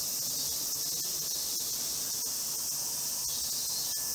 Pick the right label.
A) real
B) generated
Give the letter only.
A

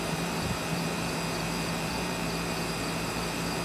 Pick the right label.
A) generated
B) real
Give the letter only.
A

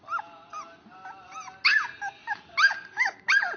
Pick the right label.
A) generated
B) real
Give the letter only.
B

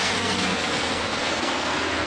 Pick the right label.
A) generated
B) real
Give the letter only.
A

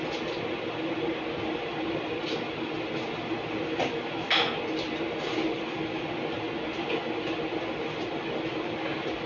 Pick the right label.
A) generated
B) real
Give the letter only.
B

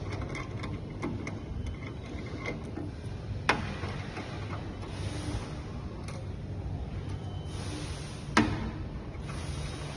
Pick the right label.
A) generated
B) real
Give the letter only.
B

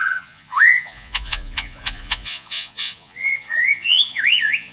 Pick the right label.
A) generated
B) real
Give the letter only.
A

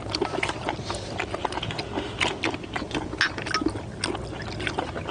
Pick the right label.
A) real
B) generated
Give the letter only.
A